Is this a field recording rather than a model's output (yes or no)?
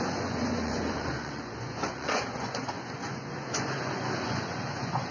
no